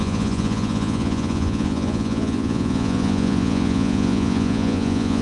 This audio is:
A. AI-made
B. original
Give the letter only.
A